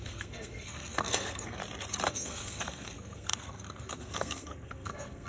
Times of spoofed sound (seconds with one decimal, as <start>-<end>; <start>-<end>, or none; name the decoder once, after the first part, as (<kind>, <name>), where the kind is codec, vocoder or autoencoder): 0.0-1.6 (codec, SNAC); 2.1-5.3